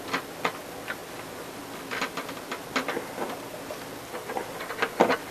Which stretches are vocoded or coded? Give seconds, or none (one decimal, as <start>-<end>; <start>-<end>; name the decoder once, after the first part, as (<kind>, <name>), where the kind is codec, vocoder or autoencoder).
1.0-1.6 (vocoder, BigVGAN v2)